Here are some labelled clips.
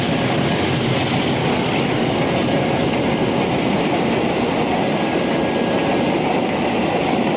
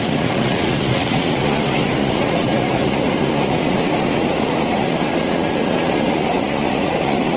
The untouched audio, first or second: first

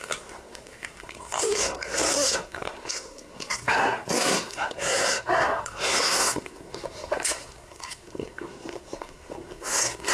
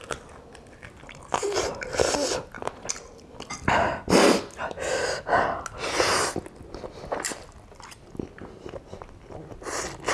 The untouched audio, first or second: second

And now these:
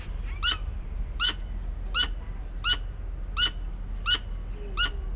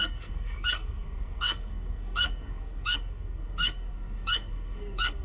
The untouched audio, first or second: first